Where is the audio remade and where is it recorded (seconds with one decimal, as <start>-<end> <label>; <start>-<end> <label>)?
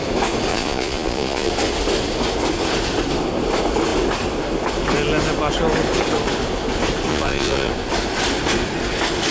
0.0-0.5 recorded; 0.5-1.5 remade; 1.5-7.1 recorded; 7.1-7.7 remade; 7.7-9.3 recorded